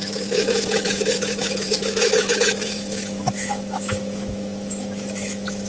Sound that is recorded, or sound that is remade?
remade